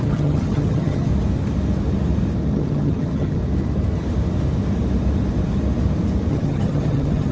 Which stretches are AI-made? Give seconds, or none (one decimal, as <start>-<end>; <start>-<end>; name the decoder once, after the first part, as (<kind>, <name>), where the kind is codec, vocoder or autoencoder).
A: 0.0-1.1 (vocoder, HiFi-GAN); 2.5-3.4; 6.3-7.3